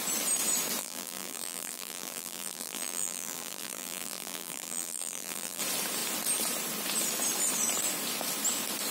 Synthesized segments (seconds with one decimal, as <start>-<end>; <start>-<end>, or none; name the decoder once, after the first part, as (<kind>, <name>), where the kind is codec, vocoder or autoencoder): 0.8-5.6 (vocoder, BigVGAN v2)